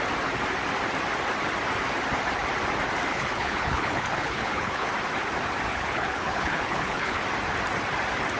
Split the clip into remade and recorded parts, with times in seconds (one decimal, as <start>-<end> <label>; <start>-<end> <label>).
0.0-3.1 recorded; 3.1-4.9 remade; 4.9-5.7 recorded; 5.7-7.2 remade; 7.2-8.4 recorded